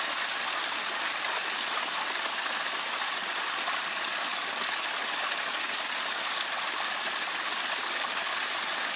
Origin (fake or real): real